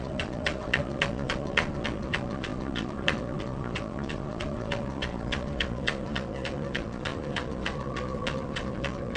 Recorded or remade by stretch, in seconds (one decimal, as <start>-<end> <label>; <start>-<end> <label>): 0.0-9.2 remade